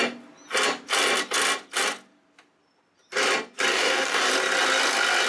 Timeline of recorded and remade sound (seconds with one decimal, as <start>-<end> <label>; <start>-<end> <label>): 0.0-3.7 recorded; 3.7-4.3 remade; 4.3-5.3 recorded